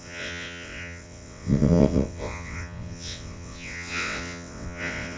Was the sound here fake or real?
fake